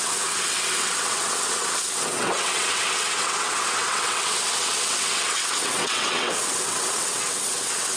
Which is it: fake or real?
fake